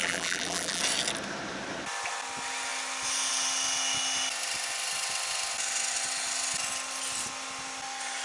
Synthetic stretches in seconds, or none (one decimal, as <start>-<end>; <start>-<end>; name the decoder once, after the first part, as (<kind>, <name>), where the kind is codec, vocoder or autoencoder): 0.0-0.8 (vocoder, BigVGAN v2)